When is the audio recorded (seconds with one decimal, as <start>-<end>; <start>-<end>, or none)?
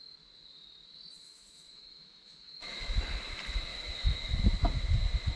0.0-1.2; 3.0-3.7; 4.3-5.4